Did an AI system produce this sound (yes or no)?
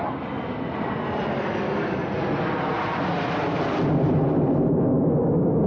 no